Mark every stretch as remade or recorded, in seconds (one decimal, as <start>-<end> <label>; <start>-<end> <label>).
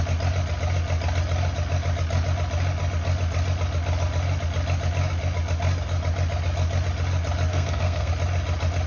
0.0-7.5 recorded; 7.5-8.1 remade; 8.1-8.9 recorded